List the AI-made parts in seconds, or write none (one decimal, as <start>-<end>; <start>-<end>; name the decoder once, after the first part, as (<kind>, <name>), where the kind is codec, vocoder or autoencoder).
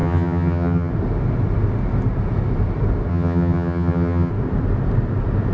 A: 0.0-0.9 (vocoder, HiFi-GAN); 3.1-4.3